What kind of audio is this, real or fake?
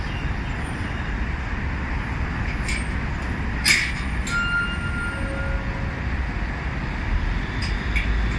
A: real